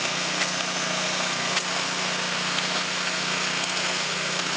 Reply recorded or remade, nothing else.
remade